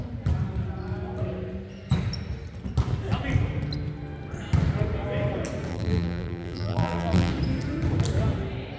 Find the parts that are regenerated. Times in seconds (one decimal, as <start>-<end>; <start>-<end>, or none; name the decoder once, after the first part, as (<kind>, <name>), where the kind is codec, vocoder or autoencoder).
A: 5.7-7.3 (vocoder, BigVGAN v2)